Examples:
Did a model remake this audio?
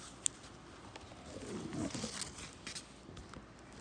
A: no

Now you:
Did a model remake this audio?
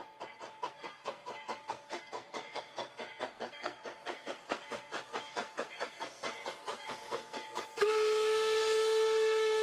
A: yes